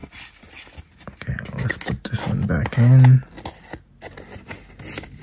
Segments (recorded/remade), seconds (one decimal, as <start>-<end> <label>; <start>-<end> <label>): 0.0-5.2 recorded